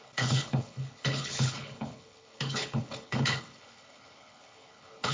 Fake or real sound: fake